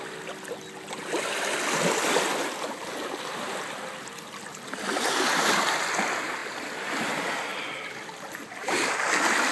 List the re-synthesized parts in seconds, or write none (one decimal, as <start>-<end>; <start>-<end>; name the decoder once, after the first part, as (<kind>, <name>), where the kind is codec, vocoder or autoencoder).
none

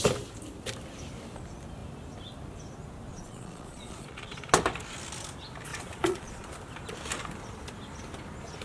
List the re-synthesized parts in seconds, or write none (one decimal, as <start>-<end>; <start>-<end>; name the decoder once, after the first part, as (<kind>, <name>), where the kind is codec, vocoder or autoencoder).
3.1-4.5 (vocoder, Vocos); 5.7-6.5